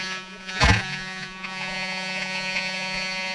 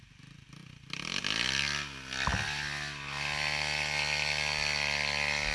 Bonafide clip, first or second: second